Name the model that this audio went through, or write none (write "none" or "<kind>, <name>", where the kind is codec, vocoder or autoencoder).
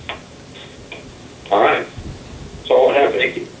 none